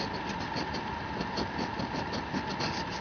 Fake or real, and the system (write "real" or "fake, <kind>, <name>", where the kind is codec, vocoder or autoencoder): real